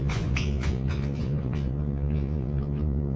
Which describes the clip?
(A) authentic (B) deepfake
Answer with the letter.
B